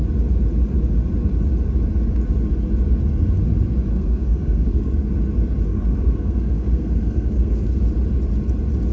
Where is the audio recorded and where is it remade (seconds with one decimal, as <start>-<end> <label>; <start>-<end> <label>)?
0.0-3.9 recorded; 3.9-5.1 remade; 5.1-5.7 recorded; 5.7-7.8 remade; 7.8-8.9 recorded